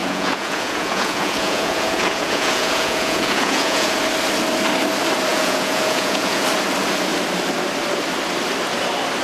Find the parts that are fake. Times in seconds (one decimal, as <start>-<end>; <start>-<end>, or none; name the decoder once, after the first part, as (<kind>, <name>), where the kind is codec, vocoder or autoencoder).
0.0-3.9 (vocoder, Vocos); 5.3-6.4